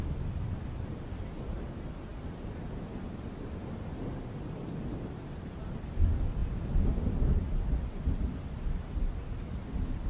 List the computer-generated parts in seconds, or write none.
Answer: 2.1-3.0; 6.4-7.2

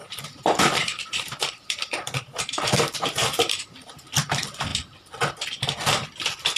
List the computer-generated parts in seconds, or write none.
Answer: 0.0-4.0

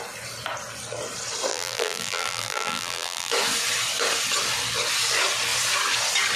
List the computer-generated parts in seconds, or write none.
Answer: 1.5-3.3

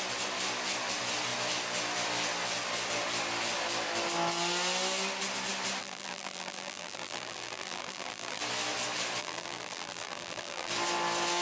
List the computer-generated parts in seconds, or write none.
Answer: 5.8-8.4; 9.2-10.7

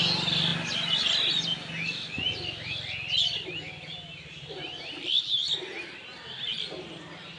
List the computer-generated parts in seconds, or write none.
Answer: none

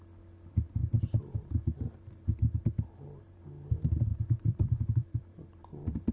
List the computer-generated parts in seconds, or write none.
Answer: 0.8-3.4; 4.1-6.1